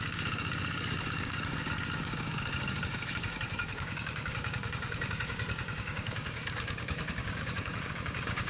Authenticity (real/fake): fake